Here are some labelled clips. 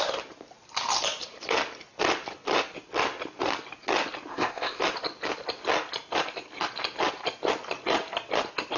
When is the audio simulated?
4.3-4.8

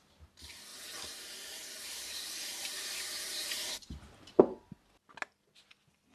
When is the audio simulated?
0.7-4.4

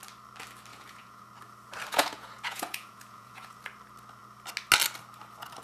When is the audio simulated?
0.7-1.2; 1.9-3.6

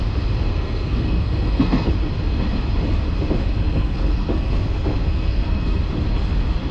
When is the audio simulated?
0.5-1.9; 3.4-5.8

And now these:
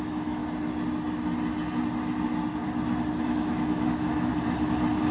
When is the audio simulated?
0.0-0.4; 3.2-4.3